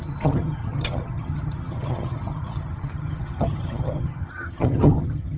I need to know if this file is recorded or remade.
remade